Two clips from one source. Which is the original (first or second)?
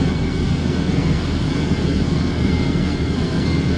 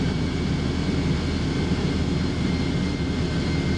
second